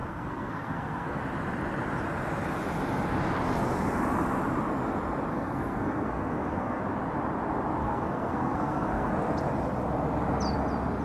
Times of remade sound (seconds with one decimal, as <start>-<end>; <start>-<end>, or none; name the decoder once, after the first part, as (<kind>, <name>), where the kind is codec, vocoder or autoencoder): 0.0-1.2 (codec, SNAC); 5.3-6.8; 7.8-9.1